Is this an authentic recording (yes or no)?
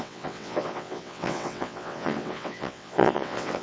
no